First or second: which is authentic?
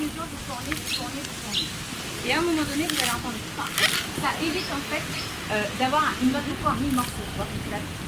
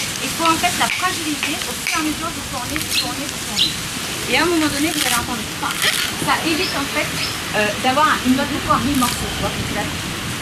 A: first